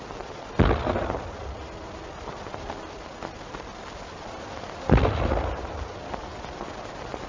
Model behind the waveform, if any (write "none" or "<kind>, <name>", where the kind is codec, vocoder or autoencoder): none